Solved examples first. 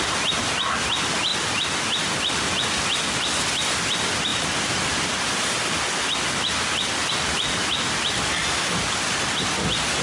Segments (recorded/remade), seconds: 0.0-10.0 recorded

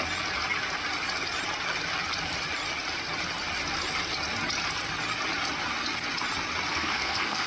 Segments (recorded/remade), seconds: 0.0-6.7 recorded; 6.7-7.5 remade

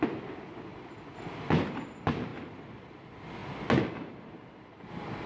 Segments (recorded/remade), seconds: 0.0-5.3 recorded

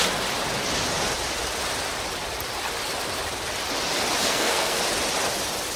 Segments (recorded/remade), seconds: 0.0-4.2 recorded; 4.2-4.8 remade; 4.8-5.8 recorded

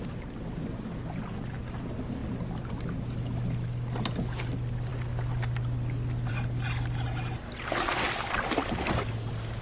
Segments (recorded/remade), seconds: 0.0-9.6 recorded